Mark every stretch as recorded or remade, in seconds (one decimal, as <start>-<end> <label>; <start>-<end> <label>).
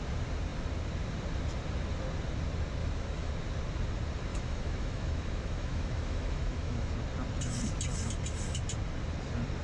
0.0-2.8 recorded; 2.8-3.3 remade; 3.3-4.3 recorded; 4.3-6.9 remade; 6.9-9.6 recorded